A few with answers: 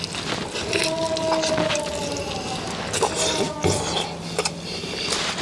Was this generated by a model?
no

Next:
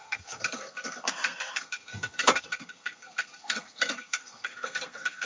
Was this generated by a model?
yes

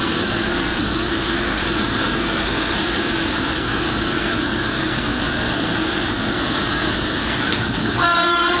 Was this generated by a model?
yes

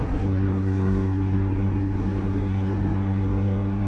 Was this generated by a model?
yes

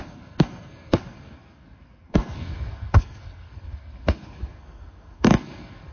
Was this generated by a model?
yes